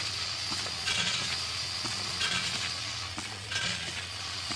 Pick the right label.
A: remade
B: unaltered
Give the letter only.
A